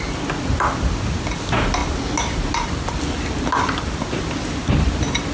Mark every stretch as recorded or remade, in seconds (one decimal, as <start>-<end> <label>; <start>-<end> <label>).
0.0-5.3 recorded